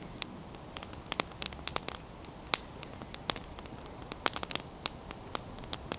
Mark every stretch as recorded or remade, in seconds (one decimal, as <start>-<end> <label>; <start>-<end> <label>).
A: 0.0-6.0 recorded